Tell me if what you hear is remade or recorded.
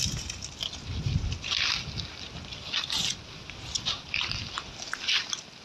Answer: recorded